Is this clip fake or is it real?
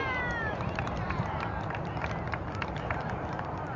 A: fake